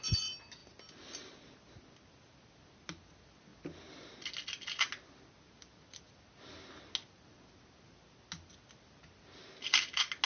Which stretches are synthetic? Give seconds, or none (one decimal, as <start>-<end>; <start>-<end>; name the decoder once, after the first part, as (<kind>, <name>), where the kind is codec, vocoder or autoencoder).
none